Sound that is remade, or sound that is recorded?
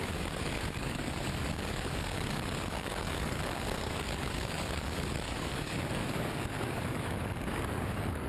remade